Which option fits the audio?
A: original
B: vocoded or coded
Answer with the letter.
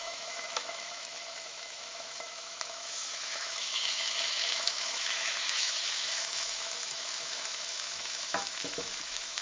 B